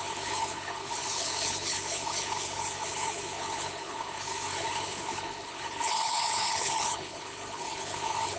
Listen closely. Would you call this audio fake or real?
fake